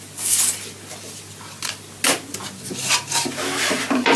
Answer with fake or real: real